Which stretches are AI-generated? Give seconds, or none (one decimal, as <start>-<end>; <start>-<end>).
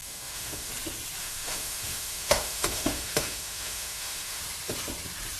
0.0-0.7; 1.2-4.4